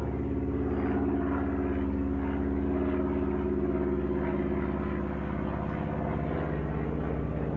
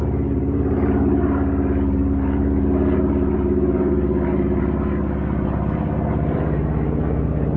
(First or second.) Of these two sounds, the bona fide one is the first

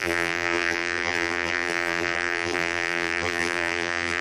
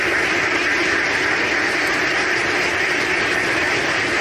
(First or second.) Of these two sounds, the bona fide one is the second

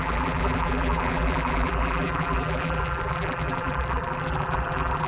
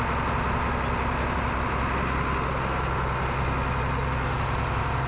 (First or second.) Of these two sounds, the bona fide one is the second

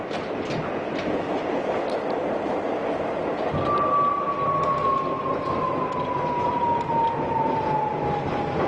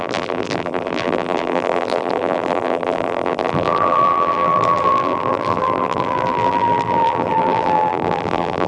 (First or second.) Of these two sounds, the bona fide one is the first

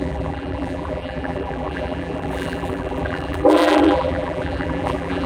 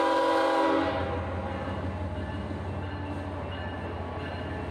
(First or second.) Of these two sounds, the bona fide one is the second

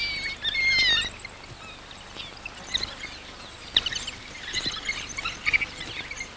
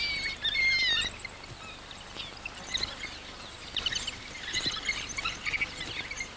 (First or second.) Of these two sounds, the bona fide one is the first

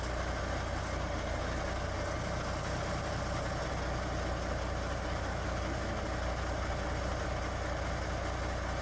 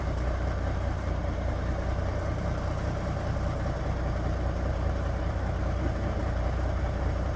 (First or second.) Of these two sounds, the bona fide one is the first